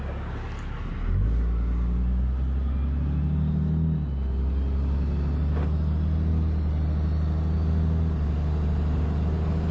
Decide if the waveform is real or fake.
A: real